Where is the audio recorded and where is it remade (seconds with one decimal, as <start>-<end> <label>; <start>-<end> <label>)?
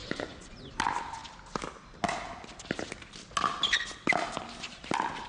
0.0-0.7 remade; 0.7-5.3 recorded